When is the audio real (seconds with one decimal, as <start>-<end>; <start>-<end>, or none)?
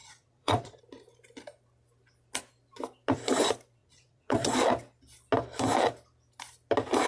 0.8-3.8; 4.5-7.1